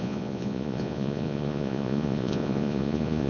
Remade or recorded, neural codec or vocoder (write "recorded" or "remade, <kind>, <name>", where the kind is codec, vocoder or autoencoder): remade, vocoder, Vocos